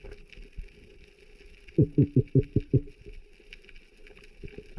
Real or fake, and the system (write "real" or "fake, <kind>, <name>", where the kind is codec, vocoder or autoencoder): real